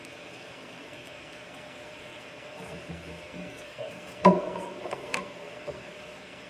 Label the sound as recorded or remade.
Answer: remade